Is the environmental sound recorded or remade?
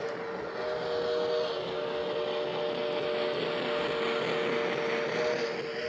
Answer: recorded